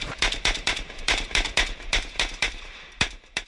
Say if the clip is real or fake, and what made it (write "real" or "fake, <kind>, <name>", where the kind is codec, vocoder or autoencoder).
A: fake, vocoder, BigVGAN v2